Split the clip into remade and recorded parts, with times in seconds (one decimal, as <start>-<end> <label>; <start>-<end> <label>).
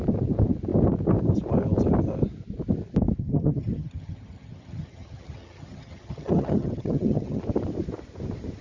0.0-3.2 recorded; 3.2-7.4 remade; 7.4-8.6 recorded